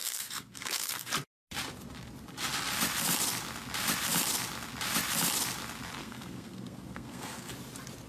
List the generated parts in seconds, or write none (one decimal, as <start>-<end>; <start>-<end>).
0.0-1.1; 6.0-7.5

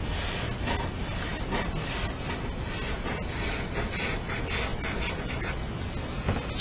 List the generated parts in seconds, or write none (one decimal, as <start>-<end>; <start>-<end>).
1.3-2.0

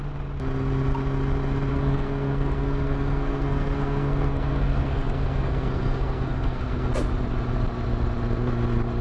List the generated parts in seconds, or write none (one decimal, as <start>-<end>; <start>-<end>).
1.7-6.9